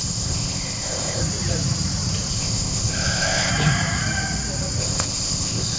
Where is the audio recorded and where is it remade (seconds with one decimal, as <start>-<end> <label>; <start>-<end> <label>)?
0.0-1.2 remade; 1.2-2.3 recorded; 2.3-3.5 remade; 3.5-4.8 recorded; 4.8-5.8 remade